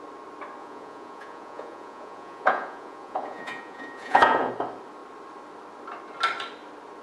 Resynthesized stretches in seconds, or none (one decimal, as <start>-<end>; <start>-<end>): 0.6-4.5